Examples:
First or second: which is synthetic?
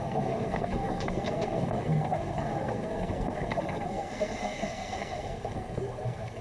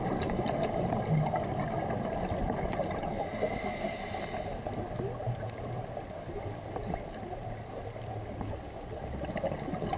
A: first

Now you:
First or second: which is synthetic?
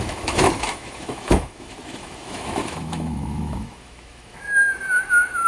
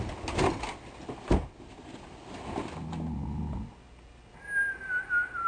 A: first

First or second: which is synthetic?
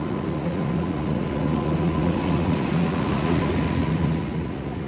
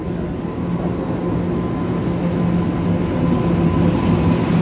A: first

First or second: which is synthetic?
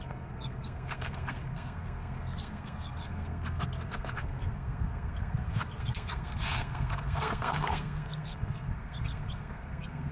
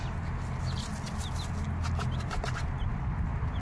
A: first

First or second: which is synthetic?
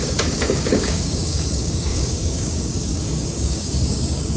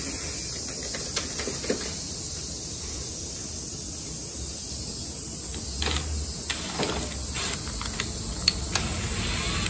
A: first